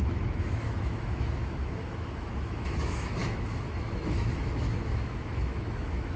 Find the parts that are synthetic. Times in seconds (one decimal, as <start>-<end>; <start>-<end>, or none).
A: 0.0-6.2